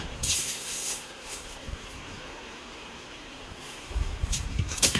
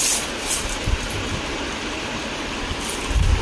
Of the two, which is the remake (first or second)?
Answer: first